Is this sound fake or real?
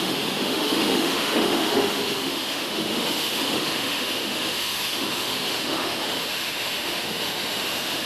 fake